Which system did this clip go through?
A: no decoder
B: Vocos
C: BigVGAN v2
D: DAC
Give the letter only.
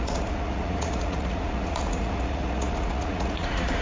B